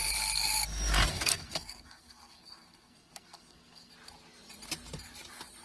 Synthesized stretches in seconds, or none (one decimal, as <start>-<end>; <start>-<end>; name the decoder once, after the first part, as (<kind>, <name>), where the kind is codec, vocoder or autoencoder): 1.1-3.9 (codec, SNAC)